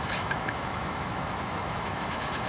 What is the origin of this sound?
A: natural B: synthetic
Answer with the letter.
B